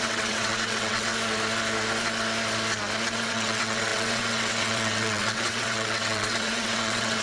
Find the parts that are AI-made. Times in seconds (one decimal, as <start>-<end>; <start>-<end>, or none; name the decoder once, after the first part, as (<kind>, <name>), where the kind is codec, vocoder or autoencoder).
0.0-1.1 (vocoder, WaveNeXt); 3.1-7.2